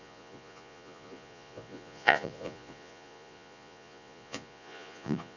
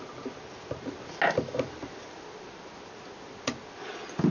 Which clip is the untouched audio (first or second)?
second